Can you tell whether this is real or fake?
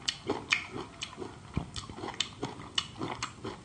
real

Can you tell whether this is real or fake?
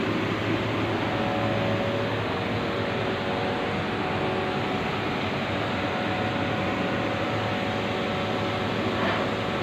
real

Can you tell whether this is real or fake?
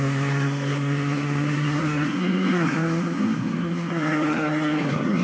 fake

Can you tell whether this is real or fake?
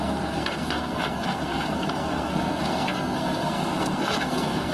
fake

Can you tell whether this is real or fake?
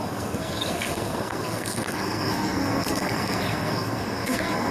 fake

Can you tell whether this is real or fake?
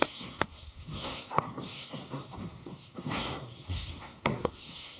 fake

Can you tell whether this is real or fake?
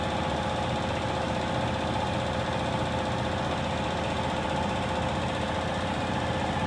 real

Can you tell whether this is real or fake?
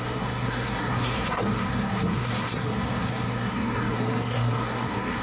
fake